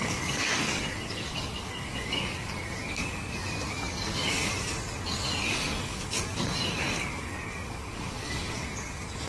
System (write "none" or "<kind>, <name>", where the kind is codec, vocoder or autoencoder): codec, DAC